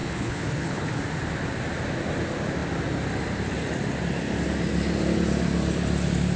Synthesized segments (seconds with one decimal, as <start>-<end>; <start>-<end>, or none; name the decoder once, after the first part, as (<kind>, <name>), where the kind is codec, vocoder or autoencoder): 0.0-1.0 (codec, HILCodec)